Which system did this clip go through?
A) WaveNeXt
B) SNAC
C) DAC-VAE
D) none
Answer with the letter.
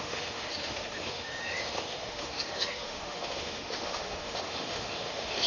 C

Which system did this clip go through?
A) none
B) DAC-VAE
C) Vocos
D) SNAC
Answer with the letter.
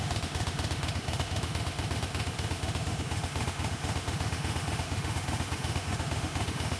B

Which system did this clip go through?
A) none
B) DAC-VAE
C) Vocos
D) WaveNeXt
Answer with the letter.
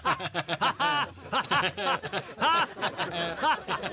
A